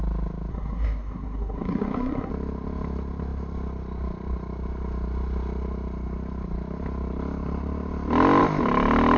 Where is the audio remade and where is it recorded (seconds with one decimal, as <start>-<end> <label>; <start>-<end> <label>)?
0.0-0.5 recorded; 0.5-2.3 remade; 2.3-9.2 recorded

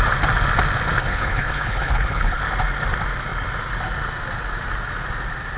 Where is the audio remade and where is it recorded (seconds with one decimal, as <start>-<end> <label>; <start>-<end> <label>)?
0.0-1.0 recorded; 1.0-2.4 remade; 2.4-5.6 recorded

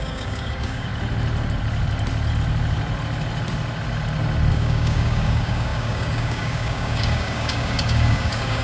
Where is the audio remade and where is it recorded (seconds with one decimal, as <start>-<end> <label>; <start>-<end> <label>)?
0.0-0.9 remade; 0.9-4.5 recorded; 4.5-8.6 remade

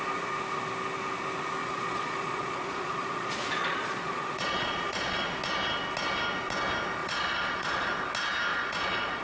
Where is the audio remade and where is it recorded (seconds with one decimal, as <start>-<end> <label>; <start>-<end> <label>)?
0.0-1.6 recorded; 1.6-5.4 remade; 5.4-7.0 recorded; 7.0-7.9 remade; 7.9-8.5 recorded; 8.5-9.2 remade